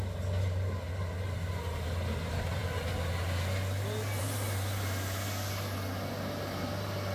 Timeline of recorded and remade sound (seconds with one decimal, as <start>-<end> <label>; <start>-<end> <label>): 0.0-7.1 recorded